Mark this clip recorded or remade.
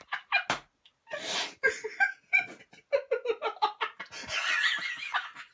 recorded